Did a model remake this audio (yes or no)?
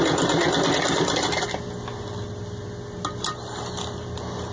no